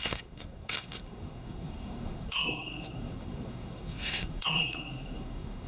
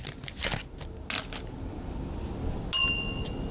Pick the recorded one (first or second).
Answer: second